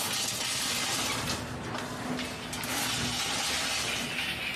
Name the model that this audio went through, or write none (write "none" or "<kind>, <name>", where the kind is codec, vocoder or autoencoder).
none